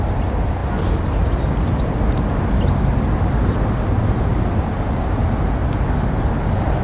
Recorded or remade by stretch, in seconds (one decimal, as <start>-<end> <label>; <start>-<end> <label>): 0.0-6.8 recorded

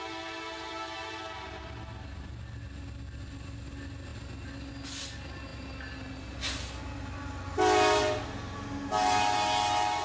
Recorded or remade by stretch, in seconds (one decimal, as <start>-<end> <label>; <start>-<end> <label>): 0.0-10.0 recorded

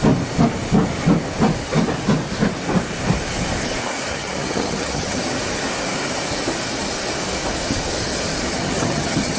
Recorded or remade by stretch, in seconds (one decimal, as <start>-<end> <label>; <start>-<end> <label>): 0.0-4.1 recorded; 4.1-5.2 remade; 5.2-8.5 recorded; 8.5-9.4 remade

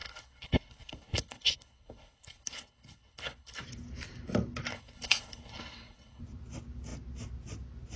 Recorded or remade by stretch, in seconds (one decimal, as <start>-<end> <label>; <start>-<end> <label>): 0.0-3.6 remade; 3.6-4.7 recorded; 4.7-6.2 remade; 6.2-8.0 recorded

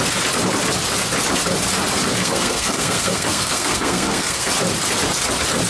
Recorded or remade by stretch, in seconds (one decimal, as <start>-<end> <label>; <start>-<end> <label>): 0.0-2.2 recorded; 2.2-4.5 remade; 4.5-5.7 recorded

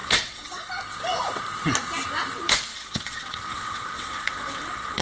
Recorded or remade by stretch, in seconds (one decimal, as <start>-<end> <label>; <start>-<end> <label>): 0.0-0.7 remade; 0.7-2.7 recorded; 2.7-5.0 remade

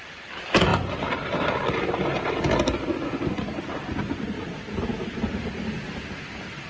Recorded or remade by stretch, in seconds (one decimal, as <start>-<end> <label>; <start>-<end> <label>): 0.0-6.7 recorded

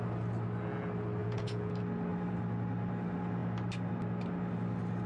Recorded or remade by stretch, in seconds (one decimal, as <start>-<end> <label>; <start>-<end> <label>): 0.0-1.2 recorded; 1.2-1.7 remade; 1.7-5.1 recorded